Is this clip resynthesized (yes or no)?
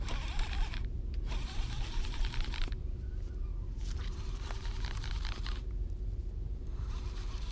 yes